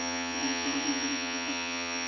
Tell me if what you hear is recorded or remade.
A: remade